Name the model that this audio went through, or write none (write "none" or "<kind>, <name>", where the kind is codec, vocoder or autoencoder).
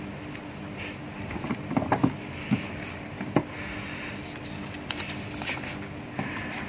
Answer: none